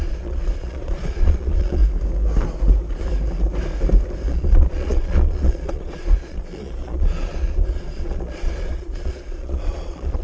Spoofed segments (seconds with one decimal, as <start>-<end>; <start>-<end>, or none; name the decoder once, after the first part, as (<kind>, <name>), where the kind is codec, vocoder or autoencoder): 0.0-1.8 (vocoder, Vocos); 4.3-10.2